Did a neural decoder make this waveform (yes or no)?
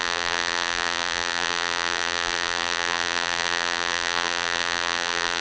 yes